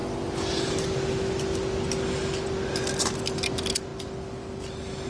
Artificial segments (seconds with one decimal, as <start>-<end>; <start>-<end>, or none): none